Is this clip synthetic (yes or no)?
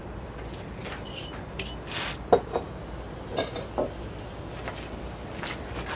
no